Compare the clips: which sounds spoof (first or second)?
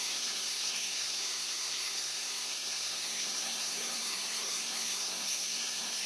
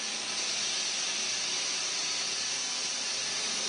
first